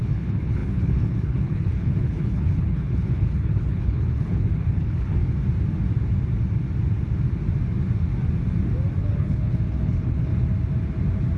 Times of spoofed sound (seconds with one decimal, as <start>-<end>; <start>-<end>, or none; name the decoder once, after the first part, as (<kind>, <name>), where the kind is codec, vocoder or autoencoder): 0.0-5.2 (codec, HILCodec); 9.0-10.3

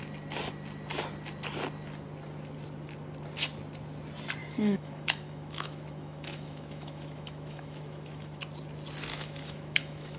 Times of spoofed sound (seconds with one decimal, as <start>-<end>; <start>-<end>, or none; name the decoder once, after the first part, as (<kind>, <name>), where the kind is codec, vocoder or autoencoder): 4.4-8.4 (autoencoder, DAC-VAE); 9.1-10.2